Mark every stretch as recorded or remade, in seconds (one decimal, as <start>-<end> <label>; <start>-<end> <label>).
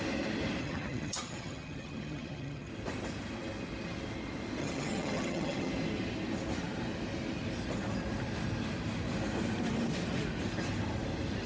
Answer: 0.0-0.6 recorded; 0.6-2.7 remade; 2.7-4.6 recorded; 4.6-5.7 remade; 5.7-11.5 recorded